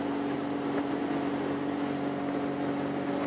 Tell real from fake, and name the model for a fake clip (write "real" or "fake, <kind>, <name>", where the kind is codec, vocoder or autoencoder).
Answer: real